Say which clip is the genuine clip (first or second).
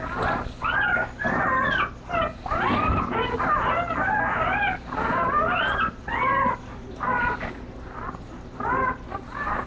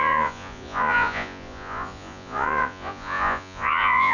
first